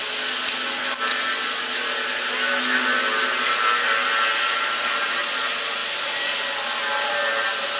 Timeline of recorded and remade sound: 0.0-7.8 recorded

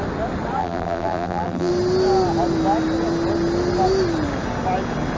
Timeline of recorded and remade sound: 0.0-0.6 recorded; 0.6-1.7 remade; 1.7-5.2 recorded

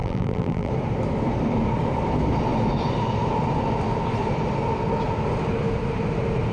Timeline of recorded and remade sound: 0.0-0.7 remade; 0.7-6.5 recorded

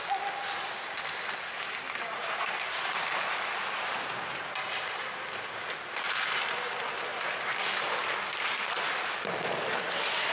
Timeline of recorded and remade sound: 0.0-7.1 recorded; 7.1-7.7 remade; 7.7-10.3 recorded

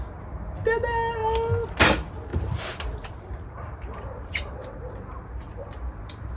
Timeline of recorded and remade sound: 0.0-2.3 recorded; 2.3-6.4 remade

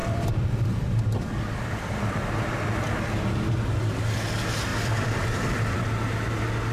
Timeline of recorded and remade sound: 0.0-3.2 remade; 3.2-4.7 recorded; 4.7-5.8 remade; 5.8-6.7 recorded

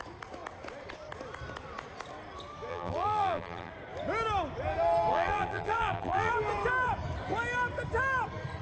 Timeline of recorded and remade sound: 0.0-2.7 recorded; 2.7-3.7 remade; 3.7-5.1 recorded; 5.1-6.3 remade; 6.3-8.6 recorded

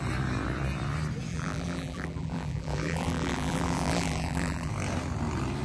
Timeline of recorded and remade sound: 0.0-1.3 recorded; 1.3-4.7 remade; 4.7-5.6 recorded